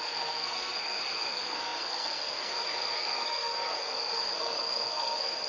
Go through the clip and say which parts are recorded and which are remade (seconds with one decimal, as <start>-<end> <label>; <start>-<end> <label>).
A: 0.0-5.5 remade